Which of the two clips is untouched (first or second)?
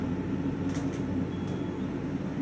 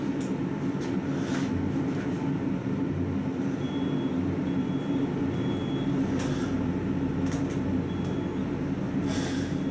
second